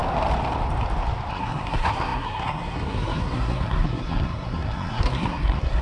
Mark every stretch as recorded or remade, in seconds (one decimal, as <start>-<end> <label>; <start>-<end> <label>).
0.0-1.3 recorded; 1.3-5.8 remade